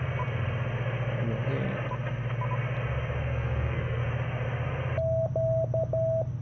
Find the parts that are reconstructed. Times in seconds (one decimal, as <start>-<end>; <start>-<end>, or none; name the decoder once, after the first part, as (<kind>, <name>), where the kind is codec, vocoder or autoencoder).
3.2-4.0 (codec, SNAC)